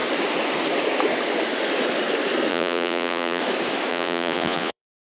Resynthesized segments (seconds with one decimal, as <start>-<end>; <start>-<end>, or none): 2.5-3.4; 3.9-5.0

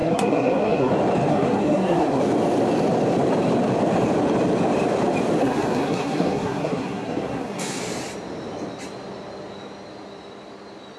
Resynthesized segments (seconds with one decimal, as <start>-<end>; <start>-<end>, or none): 0.0-0.9; 1.3-2.2; 5.4-7.8

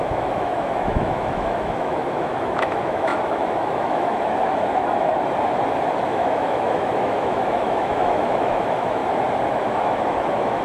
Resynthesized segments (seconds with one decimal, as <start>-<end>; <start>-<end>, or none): 0.0-5.1; 6.0-9.0; 9.5-10.6

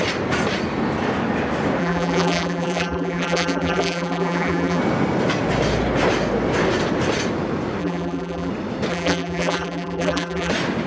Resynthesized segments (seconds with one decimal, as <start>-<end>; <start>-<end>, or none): 1.8-4.8; 7.8-8.5; 8.9-10.5

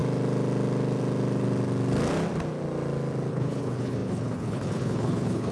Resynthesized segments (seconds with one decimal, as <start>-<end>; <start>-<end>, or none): 3.3-5.5

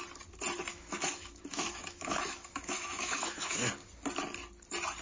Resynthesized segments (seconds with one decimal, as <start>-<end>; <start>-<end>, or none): 0.7-3.7

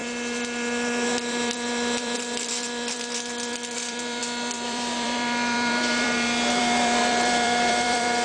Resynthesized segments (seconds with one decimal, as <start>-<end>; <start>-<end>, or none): 0.0-8.2